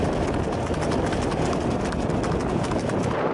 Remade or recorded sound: recorded